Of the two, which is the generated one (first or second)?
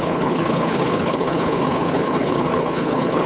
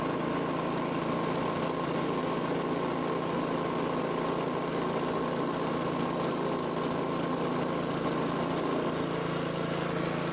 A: first